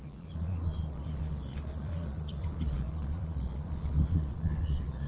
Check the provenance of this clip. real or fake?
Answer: fake